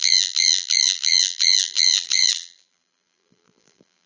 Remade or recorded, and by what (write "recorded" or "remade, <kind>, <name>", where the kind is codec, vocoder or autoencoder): remade, vocoder, BigVGAN v2